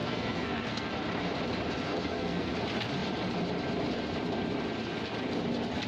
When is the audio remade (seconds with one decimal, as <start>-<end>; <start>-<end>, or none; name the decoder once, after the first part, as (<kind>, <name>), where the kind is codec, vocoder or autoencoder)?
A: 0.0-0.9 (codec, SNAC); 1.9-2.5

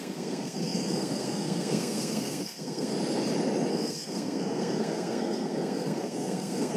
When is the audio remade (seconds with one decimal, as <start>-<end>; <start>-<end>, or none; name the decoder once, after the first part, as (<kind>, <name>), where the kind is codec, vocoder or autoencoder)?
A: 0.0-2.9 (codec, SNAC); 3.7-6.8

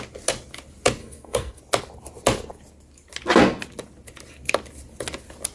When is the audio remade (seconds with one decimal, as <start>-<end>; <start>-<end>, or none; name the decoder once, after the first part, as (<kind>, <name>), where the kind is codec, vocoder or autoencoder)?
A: 1.0-1.6 (codec, SNAC)

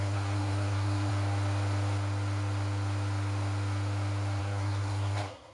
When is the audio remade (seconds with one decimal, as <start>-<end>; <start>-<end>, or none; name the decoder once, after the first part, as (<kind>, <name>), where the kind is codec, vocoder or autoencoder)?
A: 0.0-1.1 (codec, SNAC); 4.4-5.5